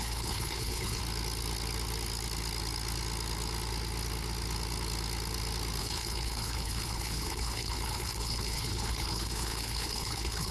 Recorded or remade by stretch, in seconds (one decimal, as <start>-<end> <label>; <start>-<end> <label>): 0.0-1.0 remade; 1.0-5.8 recorded; 5.8-10.5 remade